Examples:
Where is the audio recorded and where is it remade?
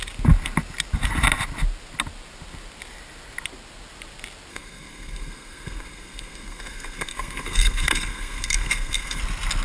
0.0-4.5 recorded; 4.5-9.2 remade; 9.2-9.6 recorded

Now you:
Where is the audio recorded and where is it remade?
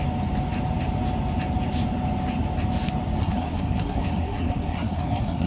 0.0-3.2 recorded; 3.2-5.5 remade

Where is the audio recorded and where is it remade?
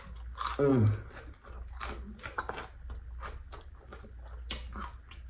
0.0-5.3 recorded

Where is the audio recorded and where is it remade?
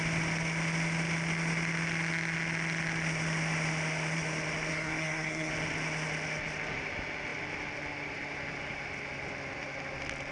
0.0-4.7 recorded; 4.7-5.5 remade; 5.5-10.3 recorded